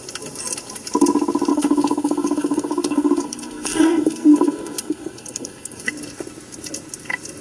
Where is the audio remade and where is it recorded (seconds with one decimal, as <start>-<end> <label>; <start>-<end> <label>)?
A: 0.0-1.5 recorded; 1.5-5.9 remade; 5.9-7.4 recorded